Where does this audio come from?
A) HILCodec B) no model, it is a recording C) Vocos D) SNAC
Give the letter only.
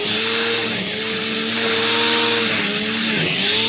B